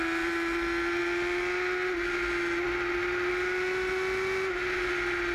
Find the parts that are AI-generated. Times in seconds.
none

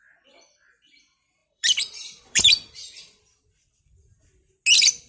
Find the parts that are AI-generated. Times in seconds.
1.4-4.5 (vocoder, BigVGAN v2)

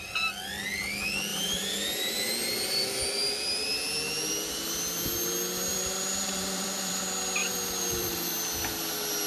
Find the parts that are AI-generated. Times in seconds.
1.3-3.0 (vocoder, BigVGAN v2); 5.7-7.0; 7.4-8.3

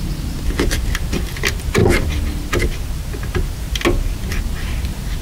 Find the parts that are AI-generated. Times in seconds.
none

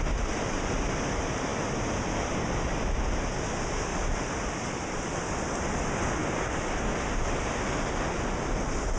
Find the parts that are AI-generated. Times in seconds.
1.5-2.2 (vocoder, BigVGAN v2); 3.9-4.7

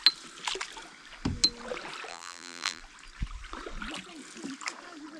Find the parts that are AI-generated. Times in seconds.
2.1-2.8 (vocoder, BigVGAN v2)

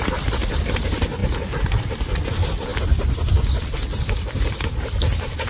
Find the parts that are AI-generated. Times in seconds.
2.7-4.2 (vocoder, BigVGAN v2)

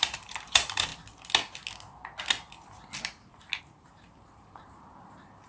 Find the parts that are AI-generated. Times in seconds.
0.0-0.9 (vocoder, BigVGAN v2); 3.6-5.5